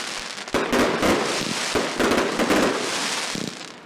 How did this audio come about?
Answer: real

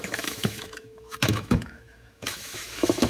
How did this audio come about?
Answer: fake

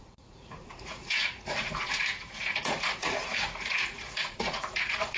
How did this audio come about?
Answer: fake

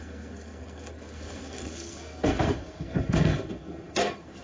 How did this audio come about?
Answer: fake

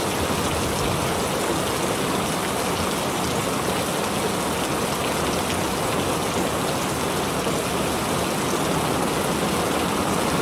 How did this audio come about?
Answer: real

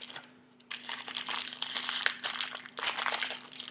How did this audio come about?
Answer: fake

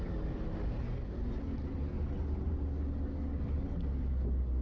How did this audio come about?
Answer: real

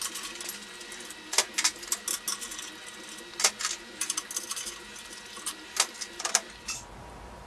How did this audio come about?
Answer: real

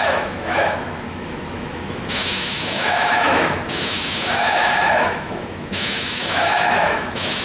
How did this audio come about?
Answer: fake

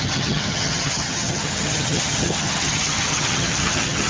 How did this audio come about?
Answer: fake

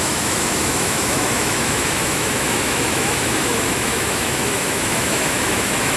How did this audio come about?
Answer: fake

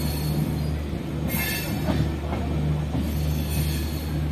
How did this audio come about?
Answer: real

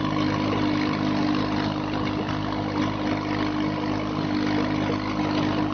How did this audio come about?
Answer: real